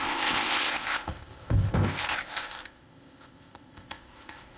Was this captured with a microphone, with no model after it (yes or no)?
no